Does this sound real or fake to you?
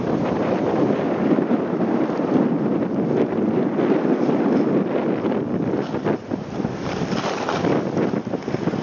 real